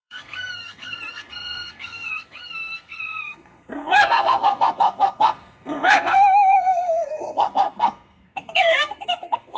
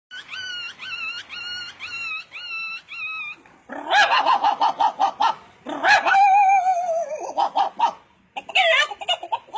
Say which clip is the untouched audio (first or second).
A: second